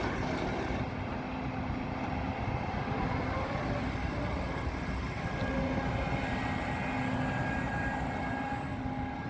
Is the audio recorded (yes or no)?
yes